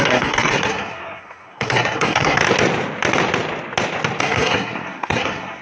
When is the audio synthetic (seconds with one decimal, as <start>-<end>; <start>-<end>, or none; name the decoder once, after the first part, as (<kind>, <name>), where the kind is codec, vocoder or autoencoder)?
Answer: 0.0-2.4 (codec, SNAC); 4.2-5.6